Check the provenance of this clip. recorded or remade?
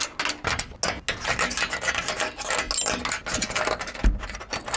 recorded